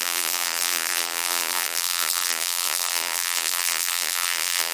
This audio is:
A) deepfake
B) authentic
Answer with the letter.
A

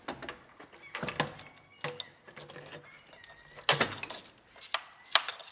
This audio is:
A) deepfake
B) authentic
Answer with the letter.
B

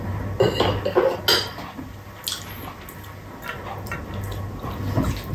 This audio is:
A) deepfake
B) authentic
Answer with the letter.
B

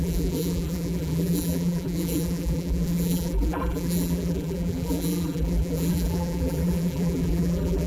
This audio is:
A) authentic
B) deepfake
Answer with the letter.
B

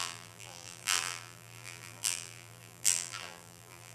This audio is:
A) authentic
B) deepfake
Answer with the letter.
B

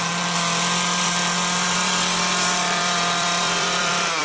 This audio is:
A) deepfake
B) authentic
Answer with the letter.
A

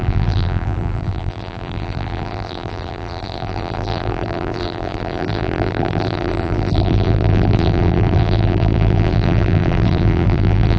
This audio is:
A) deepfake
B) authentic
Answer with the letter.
A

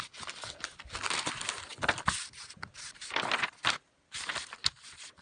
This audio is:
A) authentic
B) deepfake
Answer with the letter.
A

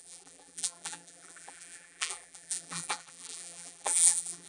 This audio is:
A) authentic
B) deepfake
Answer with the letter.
B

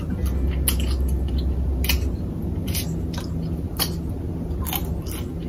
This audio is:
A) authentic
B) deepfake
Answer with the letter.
A